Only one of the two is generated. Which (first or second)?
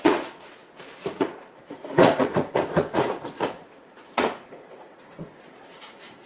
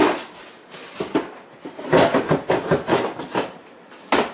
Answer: first